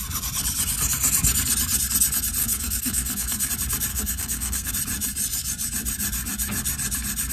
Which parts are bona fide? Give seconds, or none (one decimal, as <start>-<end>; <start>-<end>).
0.0-2.4; 3.5-3.9; 4.7-7.3